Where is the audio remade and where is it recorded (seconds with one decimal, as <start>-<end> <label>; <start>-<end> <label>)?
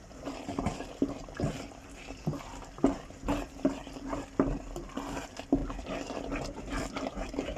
0.0-7.6 recorded